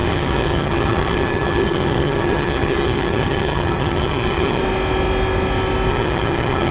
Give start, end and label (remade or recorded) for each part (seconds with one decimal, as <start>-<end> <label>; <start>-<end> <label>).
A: 0.0-4.6 remade; 4.6-5.9 recorded; 5.9-6.7 remade